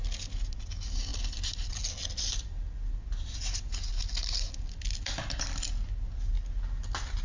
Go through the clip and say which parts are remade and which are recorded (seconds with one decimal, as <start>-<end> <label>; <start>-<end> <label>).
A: 0.0-7.2 recorded